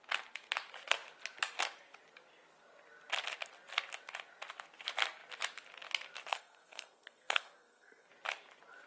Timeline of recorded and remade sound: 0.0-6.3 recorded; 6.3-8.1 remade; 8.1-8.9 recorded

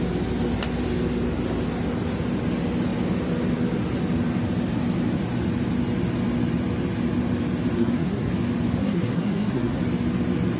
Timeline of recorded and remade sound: 0.0-7.8 recorded; 7.8-8.3 remade; 8.3-8.8 recorded; 8.8-9.8 remade; 9.8-10.6 recorded

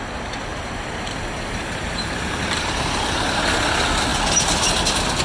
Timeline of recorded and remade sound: 0.0-0.5 recorded; 0.5-3.4 remade; 3.4-5.2 recorded

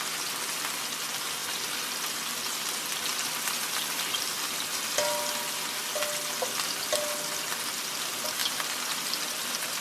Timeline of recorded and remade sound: 0.0-1.4 recorded; 1.4-1.9 remade; 1.9-8.4 recorded; 8.4-9.2 remade; 9.2-9.8 recorded